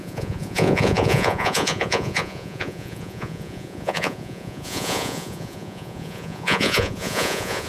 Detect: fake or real fake